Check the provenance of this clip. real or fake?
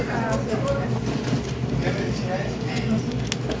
real